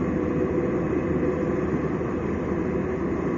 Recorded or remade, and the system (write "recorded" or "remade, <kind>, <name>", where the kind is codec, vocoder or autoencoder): recorded